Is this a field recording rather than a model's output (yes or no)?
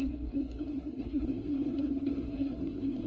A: no